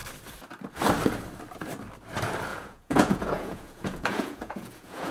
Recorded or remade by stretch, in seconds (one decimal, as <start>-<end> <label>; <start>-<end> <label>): 0.0-2.5 recorded; 2.5-5.1 remade